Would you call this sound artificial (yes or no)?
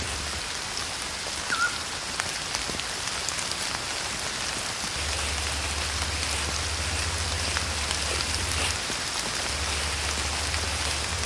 no